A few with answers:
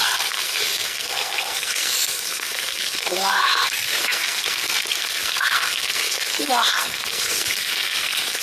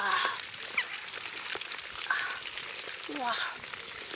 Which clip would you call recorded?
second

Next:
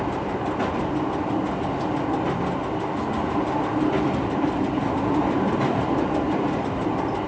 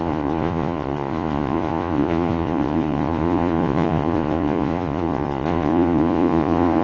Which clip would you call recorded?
first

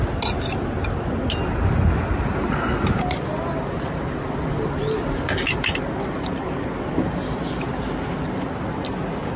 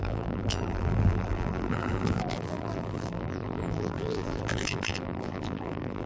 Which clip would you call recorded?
first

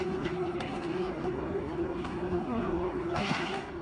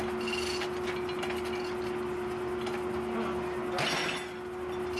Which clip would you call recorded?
second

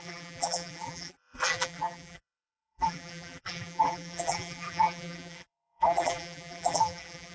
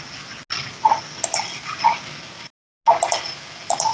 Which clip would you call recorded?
second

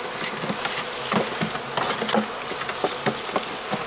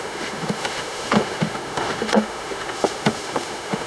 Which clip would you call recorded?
first